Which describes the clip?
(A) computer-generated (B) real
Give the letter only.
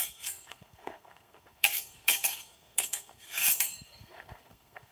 A